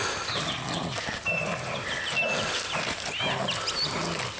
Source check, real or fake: real